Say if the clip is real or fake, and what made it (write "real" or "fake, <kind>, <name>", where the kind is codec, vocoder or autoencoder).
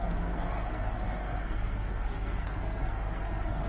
fake, codec, SNAC